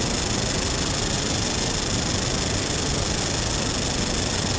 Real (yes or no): yes